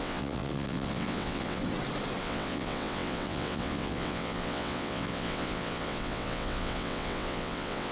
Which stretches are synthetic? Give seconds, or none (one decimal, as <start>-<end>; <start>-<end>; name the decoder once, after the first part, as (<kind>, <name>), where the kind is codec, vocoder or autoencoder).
0.0-1.6 (vocoder, WaveNeXt); 2.2-7.9